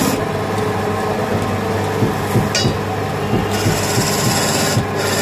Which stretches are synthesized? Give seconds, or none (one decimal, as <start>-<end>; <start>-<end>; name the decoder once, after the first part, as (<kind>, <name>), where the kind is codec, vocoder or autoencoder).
none